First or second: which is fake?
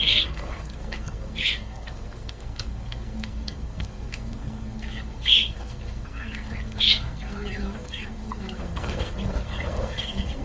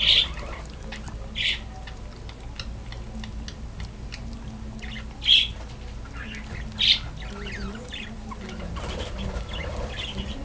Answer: first